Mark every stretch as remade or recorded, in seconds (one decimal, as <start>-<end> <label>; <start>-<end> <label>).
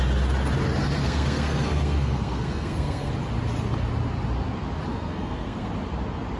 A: 0.0-1.0 recorded; 1.0-3.1 remade; 3.1-4.9 recorded; 4.9-5.7 remade; 5.7-6.4 recorded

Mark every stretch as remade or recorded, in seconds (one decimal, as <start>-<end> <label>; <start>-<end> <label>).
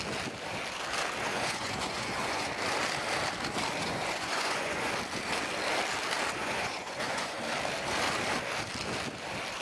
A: 0.0-1.3 recorded; 1.3-2.5 remade; 2.5-3.8 recorded; 3.8-4.9 remade; 4.9-6.4 recorded; 6.4-7.4 remade; 7.4-9.6 recorded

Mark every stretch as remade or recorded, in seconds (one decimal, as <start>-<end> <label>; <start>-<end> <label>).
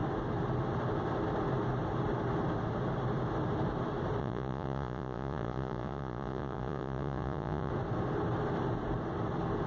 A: 0.0-4.2 recorded; 4.2-7.7 remade; 7.7-9.7 recorded